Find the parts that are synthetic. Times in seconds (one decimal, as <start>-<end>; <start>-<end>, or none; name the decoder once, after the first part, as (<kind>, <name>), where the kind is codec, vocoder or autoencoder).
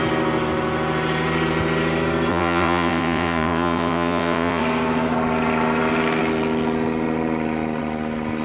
2.3-4.6 (vocoder, WaveNeXt)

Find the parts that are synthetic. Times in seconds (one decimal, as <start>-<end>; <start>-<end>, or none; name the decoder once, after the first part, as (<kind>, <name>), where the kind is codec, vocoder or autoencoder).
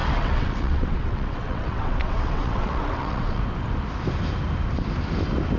0.0-3.4 (vocoder, WaveNeXt)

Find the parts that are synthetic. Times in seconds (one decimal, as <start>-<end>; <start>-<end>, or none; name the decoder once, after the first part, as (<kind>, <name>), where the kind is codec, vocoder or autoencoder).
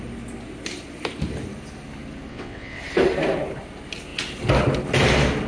2.3-2.8 (vocoder, WaveNeXt)